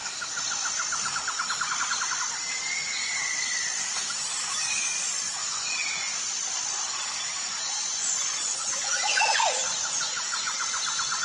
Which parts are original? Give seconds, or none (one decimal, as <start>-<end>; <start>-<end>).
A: 0.0-5.4; 6.1-7.5